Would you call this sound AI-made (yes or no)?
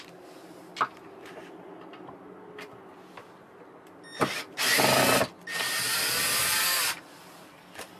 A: no